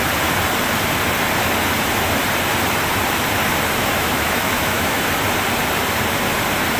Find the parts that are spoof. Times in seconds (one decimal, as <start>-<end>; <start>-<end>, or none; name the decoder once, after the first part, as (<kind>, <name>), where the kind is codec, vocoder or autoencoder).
3.8-5.1 (autoencoder, DAC-VAE)